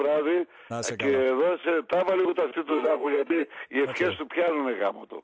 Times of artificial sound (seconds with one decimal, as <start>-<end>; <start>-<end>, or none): 2.7-3.5